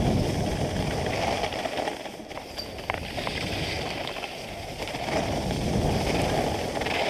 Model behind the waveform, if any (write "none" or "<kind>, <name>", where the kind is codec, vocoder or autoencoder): none